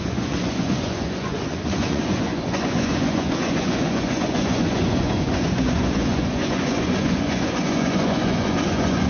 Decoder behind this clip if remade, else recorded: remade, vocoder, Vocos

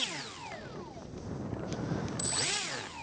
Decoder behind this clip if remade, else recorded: recorded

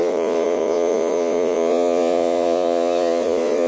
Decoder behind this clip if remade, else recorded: remade, vocoder, Vocos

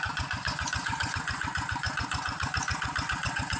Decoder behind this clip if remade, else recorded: remade, vocoder, Vocos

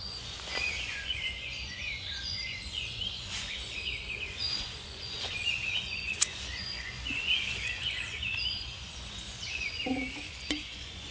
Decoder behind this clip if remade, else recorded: remade, vocoder, Vocos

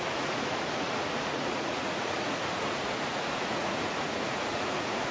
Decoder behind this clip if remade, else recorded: remade, vocoder, Vocos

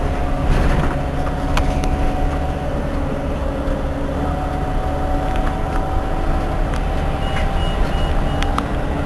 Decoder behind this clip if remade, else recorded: recorded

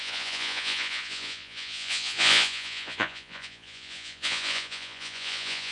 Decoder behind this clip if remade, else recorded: remade, vocoder, Vocos